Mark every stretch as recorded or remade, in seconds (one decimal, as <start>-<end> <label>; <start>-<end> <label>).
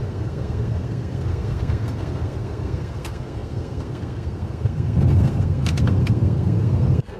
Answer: 0.0-7.2 remade